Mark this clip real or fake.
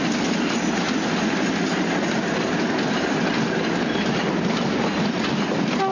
real